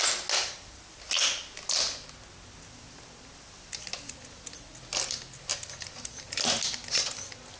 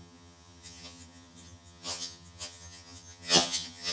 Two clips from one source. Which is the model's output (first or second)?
second